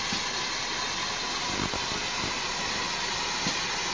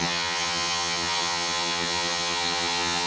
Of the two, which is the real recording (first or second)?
first